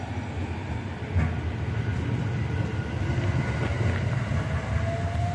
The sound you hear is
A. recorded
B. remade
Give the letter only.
A